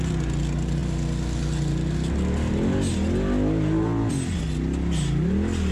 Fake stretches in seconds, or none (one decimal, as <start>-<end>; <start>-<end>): none